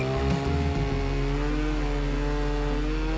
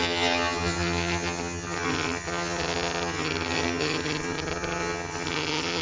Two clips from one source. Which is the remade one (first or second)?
second